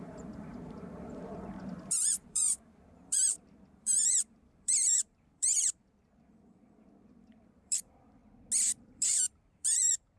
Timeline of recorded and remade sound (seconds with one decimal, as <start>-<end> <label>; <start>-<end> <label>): 0.0-8.2 remade; 8.2-8.8 recorded; 8.8-10.2 remade